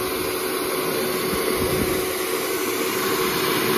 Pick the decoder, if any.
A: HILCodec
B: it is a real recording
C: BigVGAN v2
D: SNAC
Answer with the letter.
B